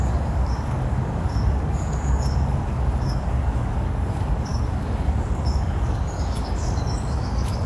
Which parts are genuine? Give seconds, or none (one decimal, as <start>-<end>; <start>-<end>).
none